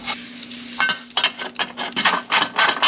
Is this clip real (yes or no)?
yes